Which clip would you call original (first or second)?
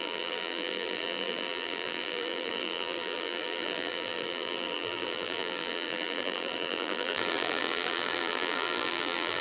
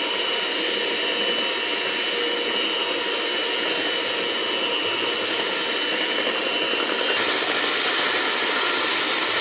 second